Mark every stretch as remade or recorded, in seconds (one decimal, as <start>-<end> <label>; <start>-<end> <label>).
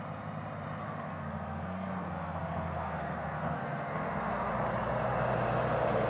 0.0-0.8 recorded; 0.8-4.5 remade; 4.5-6.1 recorded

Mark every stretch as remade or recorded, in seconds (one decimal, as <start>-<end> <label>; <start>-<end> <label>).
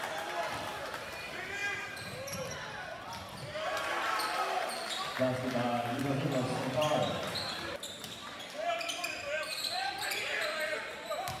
0.0-9.5 recorded; 9.5-10.4 remade; 10.4-11.4 recorded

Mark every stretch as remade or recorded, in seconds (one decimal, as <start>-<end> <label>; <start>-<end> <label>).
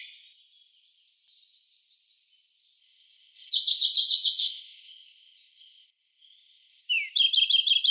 0.0-2.8 recorded; 2.8-3.5 remade; 3.5-4.4 recorded; 4.4-6.8 remade; 6.8-7.9 recorded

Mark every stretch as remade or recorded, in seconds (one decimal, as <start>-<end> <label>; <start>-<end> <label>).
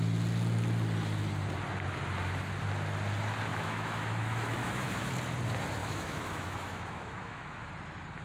0.0-3.5 recorded; 3.5-5.1 remade; 5.1-5.8 recorded; 5.8-7.7 remade; 7.7-8.2 recorded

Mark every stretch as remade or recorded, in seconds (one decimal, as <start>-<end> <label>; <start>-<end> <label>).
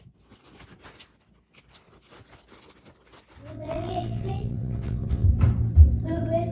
0.0-3.5 recorded; 3.5-5.3 remade; 5.3-6.5 recorded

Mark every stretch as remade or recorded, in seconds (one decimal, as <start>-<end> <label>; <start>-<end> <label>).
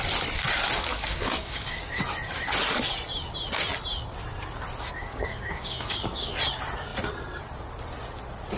0.0-0.9 recorded; 0.9-1.8 remade; 1.8-5.1 recorded; 5.1-6.3 remade; 6.3-8.6 recorded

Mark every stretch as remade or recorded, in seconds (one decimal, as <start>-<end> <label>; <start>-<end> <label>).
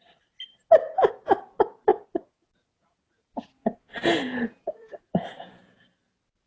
0.0-1.9 recorded; 1.9-5.8 remade; 5.8-6.5 recorded